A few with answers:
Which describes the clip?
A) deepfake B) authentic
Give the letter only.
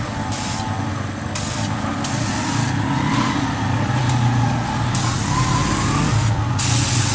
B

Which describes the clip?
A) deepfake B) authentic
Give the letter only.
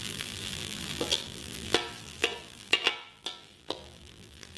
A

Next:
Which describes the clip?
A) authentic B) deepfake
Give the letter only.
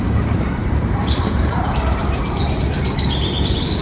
B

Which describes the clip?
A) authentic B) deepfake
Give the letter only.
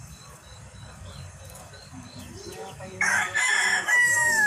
B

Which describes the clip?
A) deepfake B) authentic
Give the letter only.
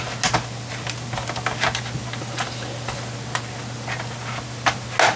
B